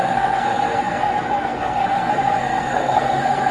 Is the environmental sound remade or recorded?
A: remade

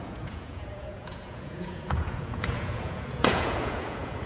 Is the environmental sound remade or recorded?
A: remade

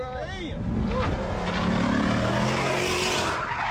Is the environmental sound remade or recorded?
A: recorded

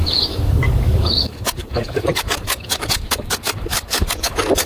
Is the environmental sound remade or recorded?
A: remade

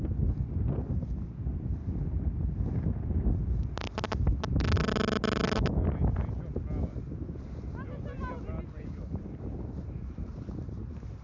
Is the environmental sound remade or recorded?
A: recorded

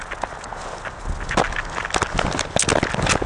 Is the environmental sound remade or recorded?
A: recorded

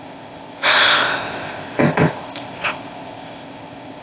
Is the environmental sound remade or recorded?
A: remade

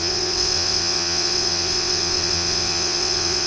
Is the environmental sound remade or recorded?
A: remade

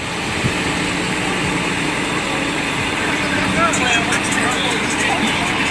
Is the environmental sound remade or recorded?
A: recorded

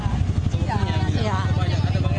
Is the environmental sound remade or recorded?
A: recorded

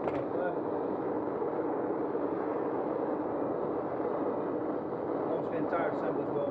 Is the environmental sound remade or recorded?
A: recorded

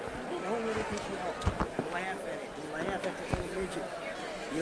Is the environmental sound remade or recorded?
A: recorded